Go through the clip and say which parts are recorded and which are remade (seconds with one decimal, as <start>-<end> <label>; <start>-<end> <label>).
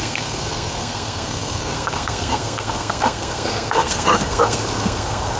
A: 0.0-5.4 remade